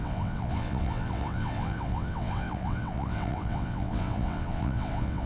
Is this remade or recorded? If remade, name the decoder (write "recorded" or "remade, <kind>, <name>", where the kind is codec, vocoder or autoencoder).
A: remade, vocoder, WaveNeXt